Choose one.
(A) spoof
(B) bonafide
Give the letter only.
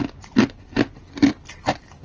B